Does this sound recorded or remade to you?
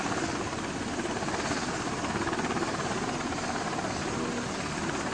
recorded